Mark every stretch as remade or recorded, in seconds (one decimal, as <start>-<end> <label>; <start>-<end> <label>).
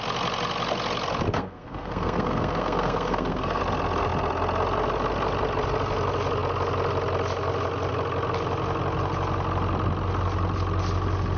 0.0-1.3 recorded; 1.3-3.6 remade; 3.6-11.4 recorded